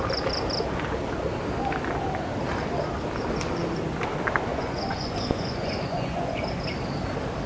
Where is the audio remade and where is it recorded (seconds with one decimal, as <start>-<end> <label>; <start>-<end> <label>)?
0.0-4.5 recorded; 4.5-6.4 remade; 6.4-7.5 recorded

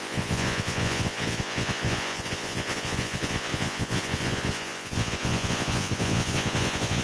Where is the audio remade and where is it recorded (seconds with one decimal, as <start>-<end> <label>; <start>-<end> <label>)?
0.0-7.0 remade

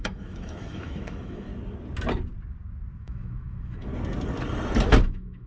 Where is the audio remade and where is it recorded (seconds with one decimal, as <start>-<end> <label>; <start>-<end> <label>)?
0.0-1.5 remade; 1.5-3.0 recorded; 3.0-3.9 remade; 3.9-5.0 recorded; 5.0-5.5 remade

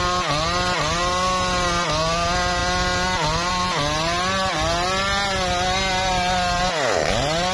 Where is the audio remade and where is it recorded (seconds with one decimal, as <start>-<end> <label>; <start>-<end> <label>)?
0.0-7.5 recorded

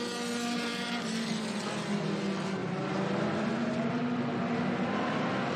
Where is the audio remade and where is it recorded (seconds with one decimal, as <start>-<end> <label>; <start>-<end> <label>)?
0.0-2.6 recorded; 2.6-4.0 remade; 4.0-5.6 recorded

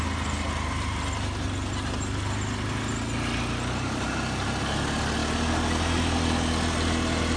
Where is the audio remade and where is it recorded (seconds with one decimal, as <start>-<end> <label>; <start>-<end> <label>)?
0.0-7.4 recorded

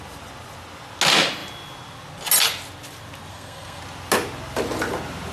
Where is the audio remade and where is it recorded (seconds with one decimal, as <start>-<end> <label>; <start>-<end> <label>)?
0.0-3.3 recorded; 3.3-3.8 remade; 3.8-5.3 recorded